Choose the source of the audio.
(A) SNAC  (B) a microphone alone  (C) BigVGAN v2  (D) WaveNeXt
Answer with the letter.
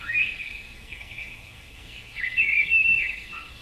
A